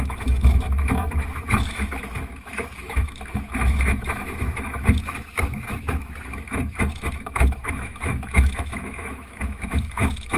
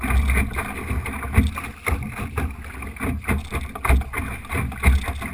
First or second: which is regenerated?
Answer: first